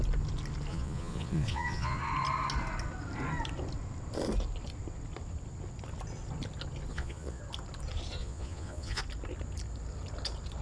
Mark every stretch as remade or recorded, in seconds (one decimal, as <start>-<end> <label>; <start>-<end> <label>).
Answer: 0.0-0.7 recorded; 0.7-2.0 remade; 2.0-6.9 recorded; 6.9-7.4 remade; 7.4-8.2 recorded; 8.2-9.0 remade; 9.0-10.6 recorded